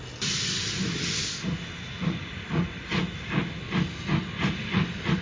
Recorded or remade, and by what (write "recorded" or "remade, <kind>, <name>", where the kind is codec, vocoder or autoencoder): recorded